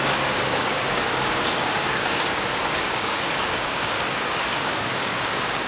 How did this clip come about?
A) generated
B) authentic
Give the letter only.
A